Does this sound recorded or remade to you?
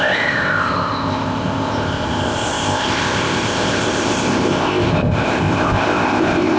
remade